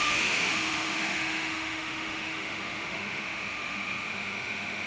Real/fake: fake